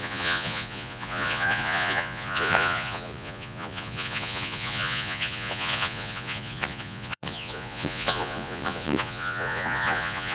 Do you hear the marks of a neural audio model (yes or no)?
yes